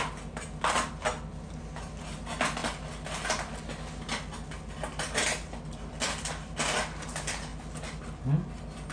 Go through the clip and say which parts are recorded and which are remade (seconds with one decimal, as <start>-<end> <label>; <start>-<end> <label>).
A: 0.0-8.9 recorded

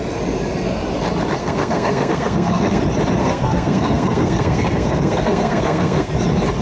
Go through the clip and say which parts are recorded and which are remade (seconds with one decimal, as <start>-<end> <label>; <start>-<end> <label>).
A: 0.0-1.4 recorded; 1.4-2.8 remade; 2.8-3.2 recorded; 3.2-6.1 remade; 6.1-6.6 recorded

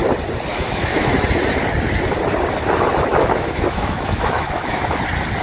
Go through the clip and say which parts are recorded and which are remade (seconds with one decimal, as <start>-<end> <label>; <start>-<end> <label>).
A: 0.0-0.5 recorded; 0.5-1.1 remade; 1.1-3.1 recorded; 3.1-5.0 remade; 5.0-5.4 recorded

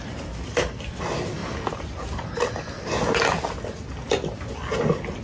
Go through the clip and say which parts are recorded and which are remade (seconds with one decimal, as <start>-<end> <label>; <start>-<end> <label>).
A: 0.0-5.2 recorded

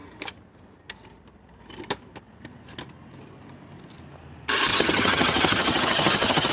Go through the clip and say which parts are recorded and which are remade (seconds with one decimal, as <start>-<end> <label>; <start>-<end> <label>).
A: 0.0-4.7 recorded; 4.7-6.5 remade

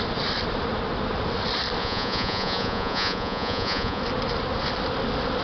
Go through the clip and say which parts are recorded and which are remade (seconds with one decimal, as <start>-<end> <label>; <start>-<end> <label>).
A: 0.0-1.8 recorded; 1.8-4.0 remade; 4.0-5.4 recorded

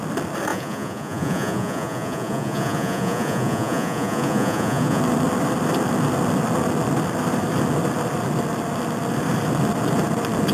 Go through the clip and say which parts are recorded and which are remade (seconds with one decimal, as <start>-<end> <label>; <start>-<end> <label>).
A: 0.0-0.5 recorded; 0.5-5.0 remade; 5.0-10.5 recorded

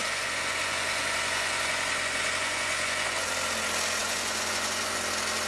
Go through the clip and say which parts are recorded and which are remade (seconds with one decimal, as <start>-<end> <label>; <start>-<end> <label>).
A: 0.0-3.3 remade; 3.3-4.0 recorded; 4.0-5.0 remade; 5.0-5.5 recorded